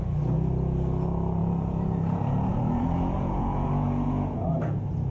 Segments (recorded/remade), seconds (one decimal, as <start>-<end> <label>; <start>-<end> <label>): 0.0-1.4 recorded; 1.4-4.5 remade; 4.5-5.1 recorded